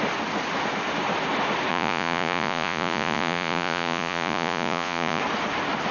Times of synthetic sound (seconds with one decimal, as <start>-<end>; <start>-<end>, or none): 1.7-5.2